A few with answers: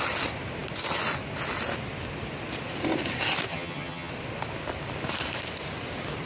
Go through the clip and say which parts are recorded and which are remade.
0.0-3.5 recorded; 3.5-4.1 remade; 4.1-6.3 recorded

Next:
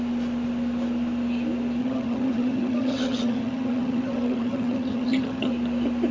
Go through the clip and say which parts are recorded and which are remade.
0.0-1.8 recorded; 1.8-5.5 remade; 5.5-6.1 recorded